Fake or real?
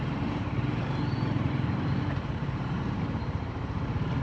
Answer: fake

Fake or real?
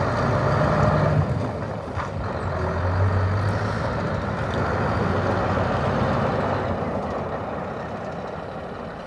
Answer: real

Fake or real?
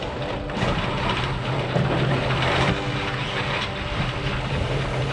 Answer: real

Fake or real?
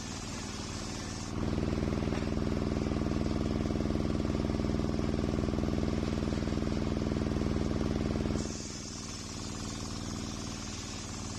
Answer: real